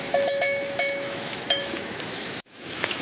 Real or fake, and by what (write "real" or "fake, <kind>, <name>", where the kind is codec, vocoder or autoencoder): fake, autoencoder, DAC-VAE